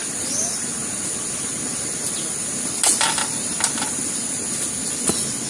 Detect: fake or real real